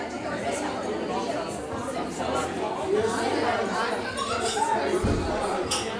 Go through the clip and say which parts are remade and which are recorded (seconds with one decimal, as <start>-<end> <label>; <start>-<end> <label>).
0.0-6.0 recorded